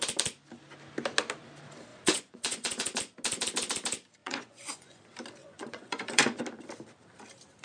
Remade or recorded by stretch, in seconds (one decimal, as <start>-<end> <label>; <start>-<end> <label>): 0.0-1.9 recorded; 1.9-3.0 remade; 3.0-4.2 recorded; 4.2-5.0 remade; 5.0-5.4 recorded; 5.4-6.4 remade; 6.4-7.6 recorded